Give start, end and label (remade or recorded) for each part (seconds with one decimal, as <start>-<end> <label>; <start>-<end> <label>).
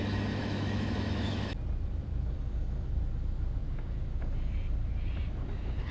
0.0-0.4 recorded; 0.4-1.5 remade; 1.5-5.9 recorded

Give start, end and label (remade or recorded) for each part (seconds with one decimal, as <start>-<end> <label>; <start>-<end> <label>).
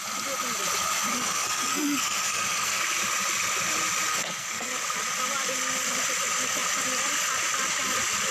0.0-1.1 recorded; 1.1-2.8 remade; 2.8-4.1 recorded; 4.1-4.7 remade; 4.7-8.3 recorded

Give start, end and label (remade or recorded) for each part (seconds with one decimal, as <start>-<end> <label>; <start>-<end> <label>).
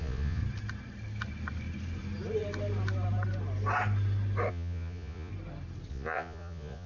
0.0-0.4 remade; 0.4-4.5 recorded; 4.5-5.3 remade; 5.3-5.9 recorded; 5.9-6.9 remade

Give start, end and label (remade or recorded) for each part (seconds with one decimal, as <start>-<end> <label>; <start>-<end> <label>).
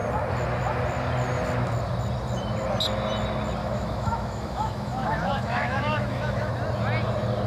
0.0-3.6 recorded; 3.6-6.5 remade; 6.5-7.5 recorded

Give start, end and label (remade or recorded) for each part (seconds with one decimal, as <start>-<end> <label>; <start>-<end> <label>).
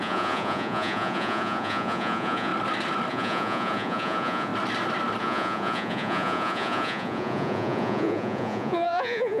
0.0-2.5 remade; 2.5-3.1 recorded; 3.1-4.5 remade; 4.5-5.2 recorded; 5.2-9.4 remade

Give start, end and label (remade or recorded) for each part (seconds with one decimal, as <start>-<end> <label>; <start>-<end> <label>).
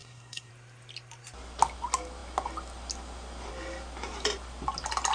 0.0-0.5 remade; 0.5-5.1 recorded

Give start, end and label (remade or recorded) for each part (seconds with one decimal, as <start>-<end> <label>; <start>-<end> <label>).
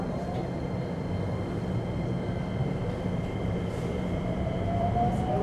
0.0-2.6 recorded; 2.6-5.4 remade